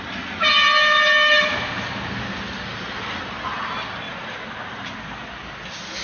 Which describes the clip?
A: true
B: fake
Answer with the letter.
A